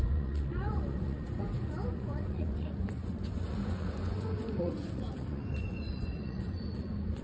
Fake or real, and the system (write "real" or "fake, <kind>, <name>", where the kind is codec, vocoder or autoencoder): fake, vocoder, Vocos